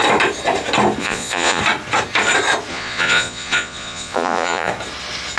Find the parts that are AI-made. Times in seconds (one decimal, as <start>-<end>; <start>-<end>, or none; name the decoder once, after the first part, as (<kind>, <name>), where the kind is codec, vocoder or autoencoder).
1.0-1.6 (vocoder, Vocos); 2.7-4.7

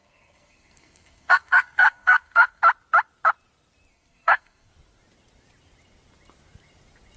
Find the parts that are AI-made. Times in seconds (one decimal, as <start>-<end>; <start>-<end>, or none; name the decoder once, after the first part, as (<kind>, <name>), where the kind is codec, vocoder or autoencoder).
0.0-2.6 (codec, SNAC); 3.9-4.7

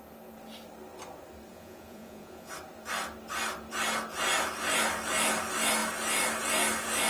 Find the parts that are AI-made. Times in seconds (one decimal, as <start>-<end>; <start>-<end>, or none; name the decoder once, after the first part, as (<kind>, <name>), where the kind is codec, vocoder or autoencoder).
1.5-2.5 (vocoder, Vocos)

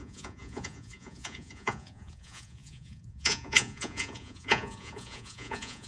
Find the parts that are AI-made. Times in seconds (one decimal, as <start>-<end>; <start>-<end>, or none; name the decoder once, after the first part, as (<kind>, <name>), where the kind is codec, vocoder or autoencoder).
0.0-5.9 (vocoder, Vocos)